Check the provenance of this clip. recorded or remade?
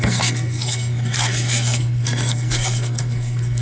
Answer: remade